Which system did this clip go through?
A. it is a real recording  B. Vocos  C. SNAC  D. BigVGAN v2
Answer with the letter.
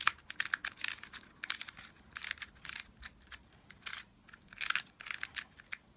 A